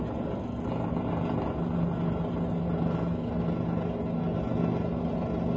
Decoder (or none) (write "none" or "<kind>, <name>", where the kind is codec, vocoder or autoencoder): none